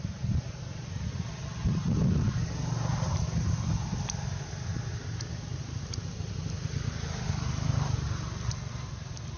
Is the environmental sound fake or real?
real